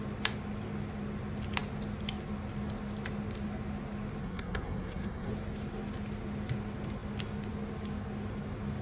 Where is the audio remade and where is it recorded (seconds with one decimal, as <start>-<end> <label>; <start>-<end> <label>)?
0.0-4.2 recorded; 4.2-5.3 remade; 5.3-8.8 recorded